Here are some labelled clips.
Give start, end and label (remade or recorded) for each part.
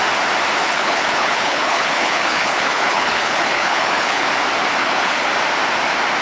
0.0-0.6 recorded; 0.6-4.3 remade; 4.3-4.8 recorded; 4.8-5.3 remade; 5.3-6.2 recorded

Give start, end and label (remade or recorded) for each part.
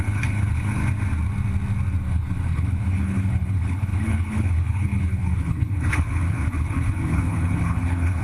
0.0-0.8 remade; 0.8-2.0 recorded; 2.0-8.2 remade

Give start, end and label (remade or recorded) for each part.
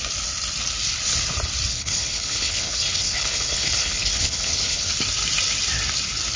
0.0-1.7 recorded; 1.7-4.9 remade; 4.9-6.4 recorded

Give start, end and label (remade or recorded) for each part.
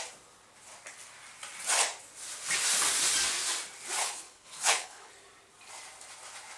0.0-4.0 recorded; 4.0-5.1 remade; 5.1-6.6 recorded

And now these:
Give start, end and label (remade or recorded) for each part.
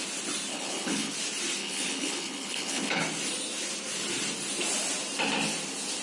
0.0-0.5 recorded; 0.5-1.1 remade; 1.1-1.6 recorded; 1.6-3.0 remade; 3.0-6.0 recorded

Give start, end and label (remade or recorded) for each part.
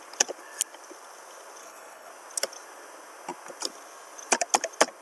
0.0-1.6 recorded; 1.6-2.1 remade; 2.1-5.0 recorded